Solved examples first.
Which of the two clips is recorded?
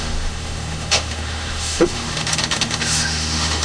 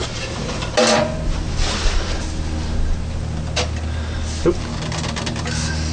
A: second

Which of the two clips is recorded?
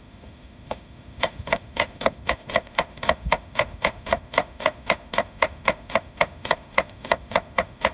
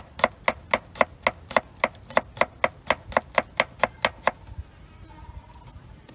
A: second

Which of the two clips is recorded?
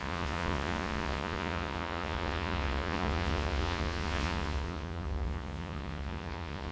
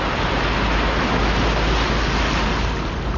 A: second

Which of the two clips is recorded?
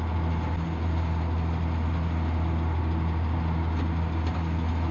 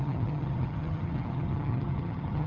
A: first